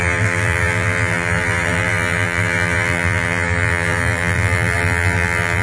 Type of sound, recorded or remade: remade